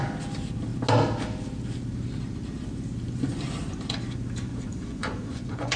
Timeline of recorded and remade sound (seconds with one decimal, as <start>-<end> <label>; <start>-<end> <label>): 0.0-4.5 recorded; 4.5-5.8 remade